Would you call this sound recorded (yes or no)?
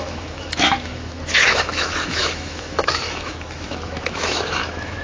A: no